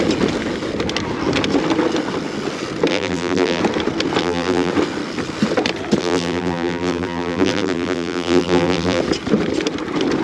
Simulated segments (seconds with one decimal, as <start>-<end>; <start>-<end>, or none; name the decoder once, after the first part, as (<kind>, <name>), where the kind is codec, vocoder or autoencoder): 2.9-3.6 (vocoder, BigVGAN v2); 4.2-4.7; 6.0-9.0